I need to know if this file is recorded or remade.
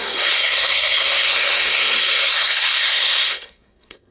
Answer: remade